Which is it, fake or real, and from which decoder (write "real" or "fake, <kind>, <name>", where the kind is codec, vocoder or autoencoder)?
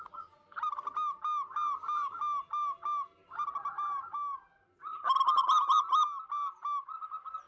real